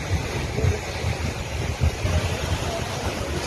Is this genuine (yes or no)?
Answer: yes